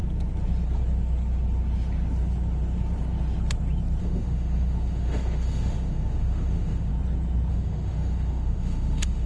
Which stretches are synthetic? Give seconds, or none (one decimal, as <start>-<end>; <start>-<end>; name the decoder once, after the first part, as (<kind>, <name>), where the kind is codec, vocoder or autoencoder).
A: 4.0-6.9 (autoencoder, DAC-VAE); 7.5-9.3